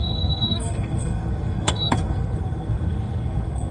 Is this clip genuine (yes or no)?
no